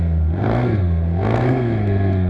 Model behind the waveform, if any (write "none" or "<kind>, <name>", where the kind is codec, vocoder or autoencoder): codec, SNAC